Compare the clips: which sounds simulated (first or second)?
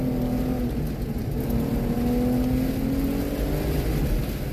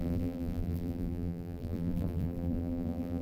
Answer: second